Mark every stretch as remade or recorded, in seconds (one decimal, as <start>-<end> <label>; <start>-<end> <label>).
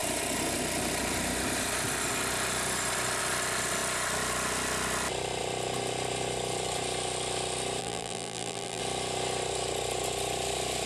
0.0-7.8 recorded; 7.8-8.8 remade; 8.8-10.9 recorded